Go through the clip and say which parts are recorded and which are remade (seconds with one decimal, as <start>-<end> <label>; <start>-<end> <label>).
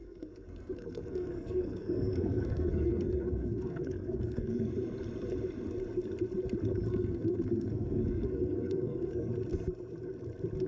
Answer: 0.0-4.7 remade; 4.7-6.9 recorded; 6.9-9.3 remade; 9.3-10.7 recorded